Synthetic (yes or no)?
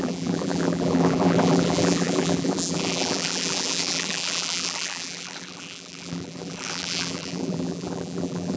yes